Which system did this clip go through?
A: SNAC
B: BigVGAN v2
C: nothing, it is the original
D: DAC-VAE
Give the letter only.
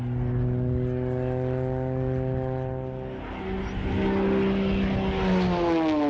C